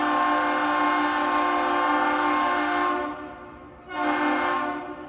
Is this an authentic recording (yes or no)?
yes